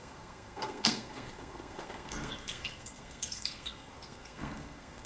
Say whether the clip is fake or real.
fake